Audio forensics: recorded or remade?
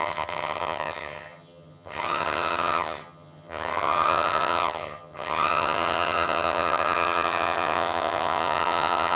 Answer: remade